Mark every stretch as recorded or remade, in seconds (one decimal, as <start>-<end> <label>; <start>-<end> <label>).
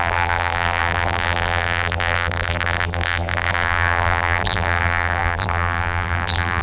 0.0-6.6 remade